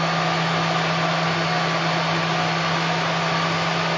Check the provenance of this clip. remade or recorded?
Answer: recorded